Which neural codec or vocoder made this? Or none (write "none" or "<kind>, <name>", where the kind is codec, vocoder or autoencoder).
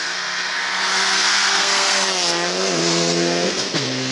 codec, SNAC